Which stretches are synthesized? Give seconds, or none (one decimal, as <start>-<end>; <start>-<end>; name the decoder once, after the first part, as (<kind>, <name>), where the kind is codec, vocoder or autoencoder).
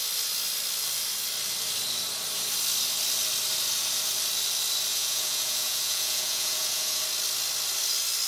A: 4.9-7.0 (vocoder, Vocos)